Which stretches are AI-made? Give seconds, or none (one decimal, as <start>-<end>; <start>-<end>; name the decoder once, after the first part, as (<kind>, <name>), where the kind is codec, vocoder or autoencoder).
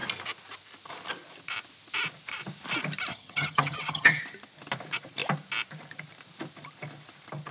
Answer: 3.1-4.2 (vocoder, HiFi-GAN)